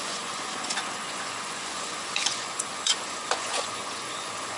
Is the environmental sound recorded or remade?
remade